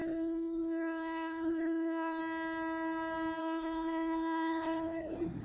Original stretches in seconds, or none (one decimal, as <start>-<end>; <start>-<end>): 2.2-3.4